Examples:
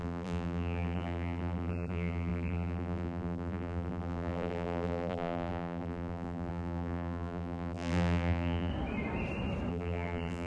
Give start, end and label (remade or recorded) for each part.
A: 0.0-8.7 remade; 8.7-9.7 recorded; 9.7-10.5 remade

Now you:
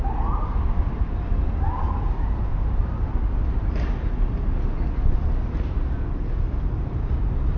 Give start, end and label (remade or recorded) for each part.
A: 0.0-3.4 remade; 3.4-7.6 recorded

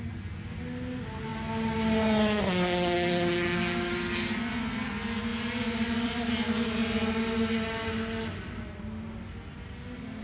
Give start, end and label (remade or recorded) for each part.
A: 0.0-5.3 recorded; 5.3-6.3 remade; 6.3-10.2 recorded

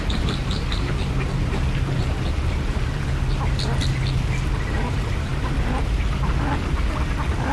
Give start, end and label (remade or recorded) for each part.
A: 0.0-7.5 recorded